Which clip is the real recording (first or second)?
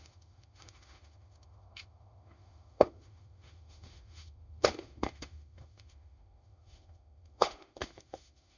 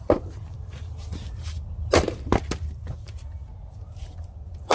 second